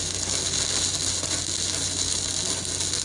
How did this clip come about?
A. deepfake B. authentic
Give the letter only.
B